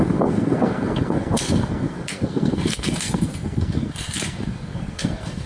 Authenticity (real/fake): fake